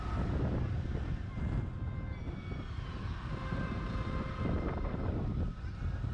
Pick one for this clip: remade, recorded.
recorded